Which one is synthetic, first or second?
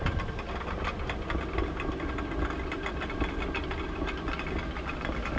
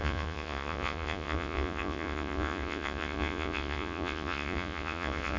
second